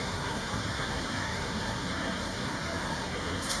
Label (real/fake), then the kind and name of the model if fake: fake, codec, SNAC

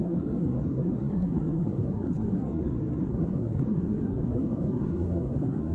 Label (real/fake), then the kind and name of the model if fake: fake, codec, SNAC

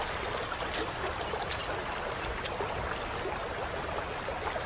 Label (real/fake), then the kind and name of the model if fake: real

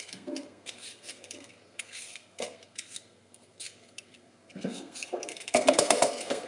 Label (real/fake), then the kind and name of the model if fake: fake, codec, SNAC